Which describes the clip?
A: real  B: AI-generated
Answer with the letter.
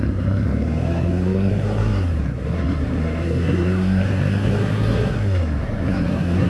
B